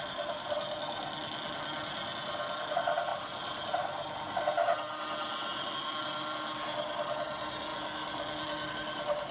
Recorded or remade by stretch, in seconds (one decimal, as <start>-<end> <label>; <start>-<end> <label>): 0.0-9.3 recorded